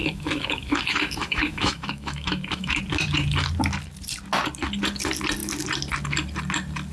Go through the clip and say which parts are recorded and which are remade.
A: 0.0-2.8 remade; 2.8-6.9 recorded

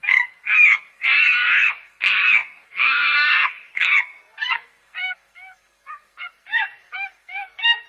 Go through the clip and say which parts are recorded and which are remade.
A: 0.0-7.9 remade

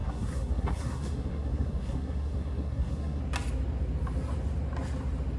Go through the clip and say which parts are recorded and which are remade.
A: 0.0-3.2 remade; 3.2-5.4 recorded

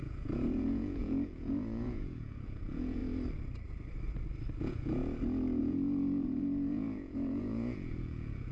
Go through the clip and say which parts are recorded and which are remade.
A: 0.0-3.0 remade; 3.0-4.6 recorded; 4.6-5.0 remade; 5.0-5.6 recorded; 5.6-8.5 remade